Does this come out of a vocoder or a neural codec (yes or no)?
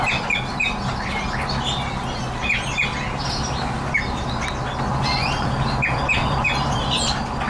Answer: no